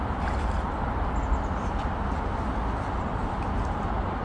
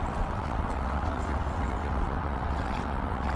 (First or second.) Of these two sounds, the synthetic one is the second